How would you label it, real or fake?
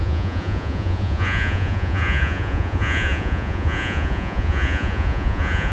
fake